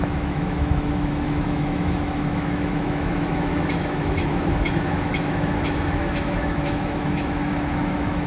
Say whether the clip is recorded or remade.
remade